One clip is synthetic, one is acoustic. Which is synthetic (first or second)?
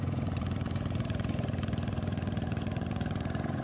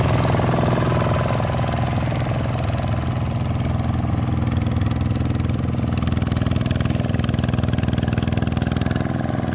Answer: first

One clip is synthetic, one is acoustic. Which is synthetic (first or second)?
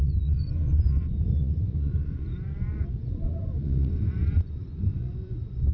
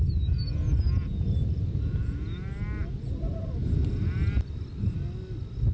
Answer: first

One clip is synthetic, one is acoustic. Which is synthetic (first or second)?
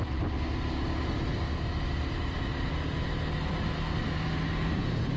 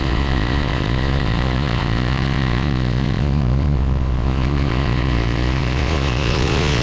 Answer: second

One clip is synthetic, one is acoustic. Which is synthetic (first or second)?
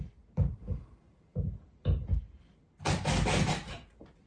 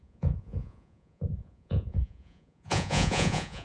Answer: second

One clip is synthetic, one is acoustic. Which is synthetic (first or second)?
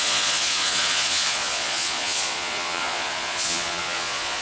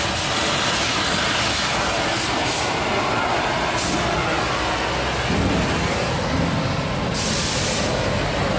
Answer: first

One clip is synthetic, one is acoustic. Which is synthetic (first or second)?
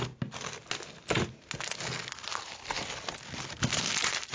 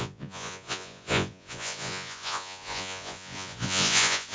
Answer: second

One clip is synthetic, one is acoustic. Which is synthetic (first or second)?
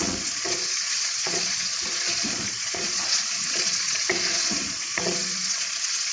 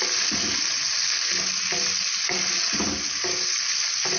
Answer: first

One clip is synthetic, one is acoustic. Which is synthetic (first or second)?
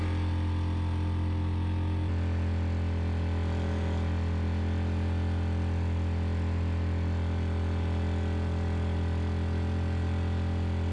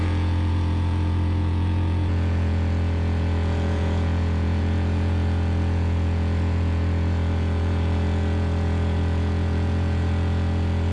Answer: second